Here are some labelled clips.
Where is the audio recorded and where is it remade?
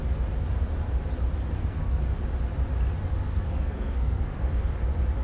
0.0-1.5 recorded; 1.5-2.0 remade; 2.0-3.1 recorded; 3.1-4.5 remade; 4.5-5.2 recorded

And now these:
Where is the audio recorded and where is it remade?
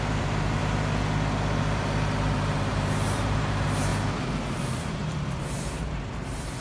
0.0-0.6 remade; 0.6-1.6 recorded; 1.6-3.9 remade; 3.9-5.5 recorded; 5.5-6.6 remade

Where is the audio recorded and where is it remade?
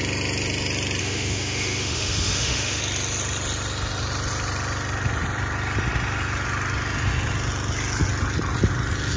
0.0-1.0 recorded; 1.0-2.8 remade; 2.8-9.2 recorded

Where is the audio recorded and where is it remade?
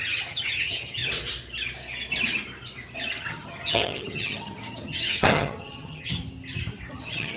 0.0-1.0 remade; 1.0-3.2 recorded; 3.2-6.2 remade; 6.2-6.9 recorded; 6.9-7.4 remade